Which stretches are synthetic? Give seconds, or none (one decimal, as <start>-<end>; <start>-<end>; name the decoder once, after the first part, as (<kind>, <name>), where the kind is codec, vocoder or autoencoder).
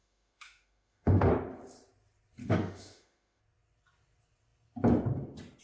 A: 0.0-1.3 (autoencoder, DAC-VAE); 2.4-3.4